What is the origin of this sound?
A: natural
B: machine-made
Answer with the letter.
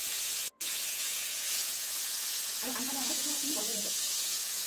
B